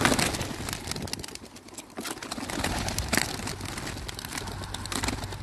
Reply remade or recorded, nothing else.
recorded